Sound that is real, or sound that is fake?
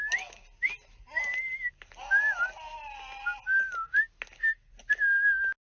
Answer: real